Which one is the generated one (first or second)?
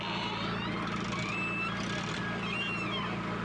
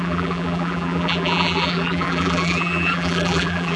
second